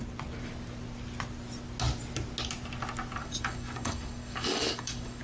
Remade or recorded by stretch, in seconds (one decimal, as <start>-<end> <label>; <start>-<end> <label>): 0.0-3.2 recorded; 3.2-5.2 remade